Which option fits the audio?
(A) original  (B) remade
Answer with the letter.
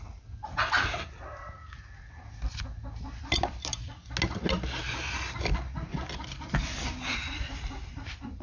A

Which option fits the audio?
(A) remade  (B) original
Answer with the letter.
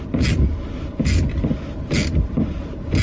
B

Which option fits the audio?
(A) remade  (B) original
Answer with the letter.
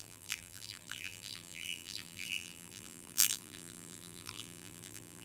A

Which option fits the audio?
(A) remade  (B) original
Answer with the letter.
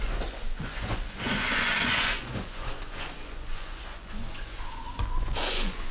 A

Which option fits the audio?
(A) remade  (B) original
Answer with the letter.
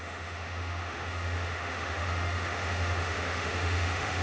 A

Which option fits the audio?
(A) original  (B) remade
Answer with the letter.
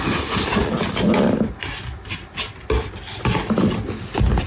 A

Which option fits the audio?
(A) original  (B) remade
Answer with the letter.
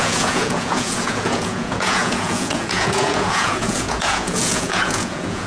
B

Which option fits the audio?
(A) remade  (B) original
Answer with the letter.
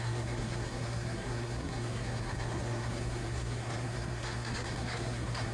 A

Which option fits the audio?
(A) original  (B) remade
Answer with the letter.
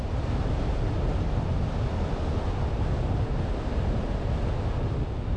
A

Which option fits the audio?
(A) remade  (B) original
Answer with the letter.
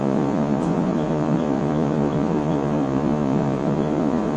A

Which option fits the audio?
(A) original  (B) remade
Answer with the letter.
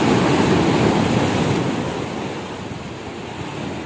A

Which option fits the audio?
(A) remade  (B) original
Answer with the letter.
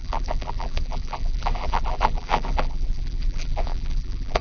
A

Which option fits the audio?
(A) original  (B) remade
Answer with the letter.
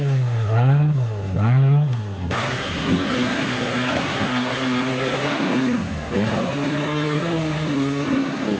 B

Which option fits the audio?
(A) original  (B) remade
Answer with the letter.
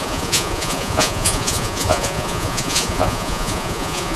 B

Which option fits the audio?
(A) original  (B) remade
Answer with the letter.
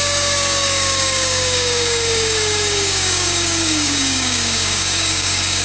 B